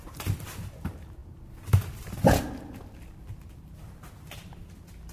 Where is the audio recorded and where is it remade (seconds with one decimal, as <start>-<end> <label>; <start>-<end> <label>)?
0.0-5.1 recorded